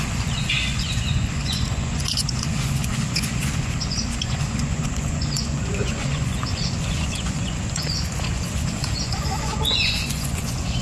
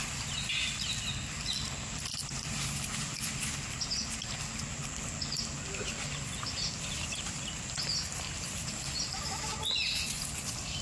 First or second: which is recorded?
second